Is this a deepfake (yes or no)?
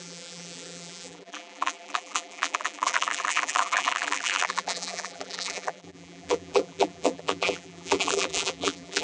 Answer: yes